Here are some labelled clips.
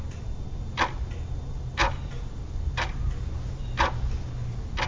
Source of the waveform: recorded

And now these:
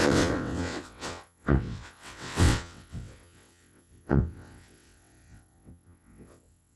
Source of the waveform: remade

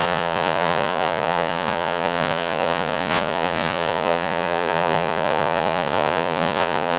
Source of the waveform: remade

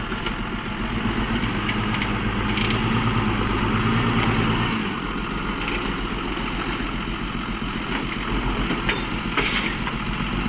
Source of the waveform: recorded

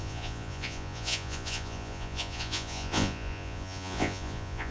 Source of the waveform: remade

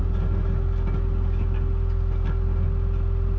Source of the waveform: recorded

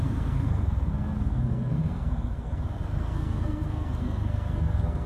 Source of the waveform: remade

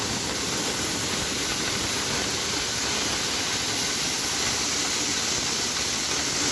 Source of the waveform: recorded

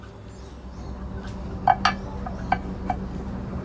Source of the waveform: recorded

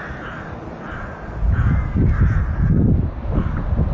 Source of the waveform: recorded